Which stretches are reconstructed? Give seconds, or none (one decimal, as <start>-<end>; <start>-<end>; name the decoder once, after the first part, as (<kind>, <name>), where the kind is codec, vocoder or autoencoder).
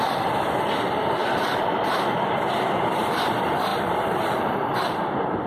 0.0-5.5 (vocoder, BigVGAN v2)